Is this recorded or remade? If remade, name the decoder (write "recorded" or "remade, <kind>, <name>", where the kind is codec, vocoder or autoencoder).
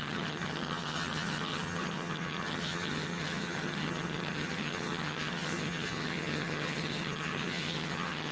remade, vocoder, HiFi-GAN